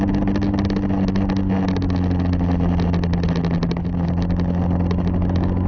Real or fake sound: real